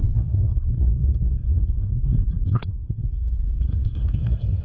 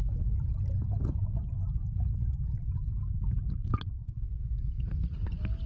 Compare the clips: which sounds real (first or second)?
second